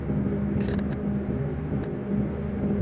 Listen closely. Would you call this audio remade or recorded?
recorded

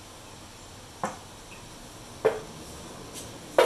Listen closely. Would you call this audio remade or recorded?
recorded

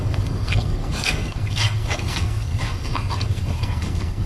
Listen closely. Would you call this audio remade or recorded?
remade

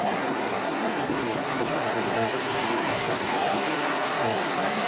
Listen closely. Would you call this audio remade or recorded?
remade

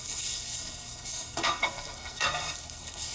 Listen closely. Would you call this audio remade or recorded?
remade